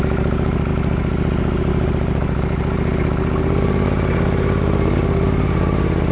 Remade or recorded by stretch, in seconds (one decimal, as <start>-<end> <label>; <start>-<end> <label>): 0.0-6.1 recorded